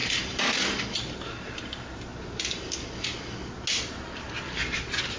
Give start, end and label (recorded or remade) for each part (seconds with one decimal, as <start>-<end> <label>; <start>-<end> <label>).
0.0-1.4 recorded; 1.4-3.1 remade; 3.1-4.2 recorded; 4.2-5.2 remade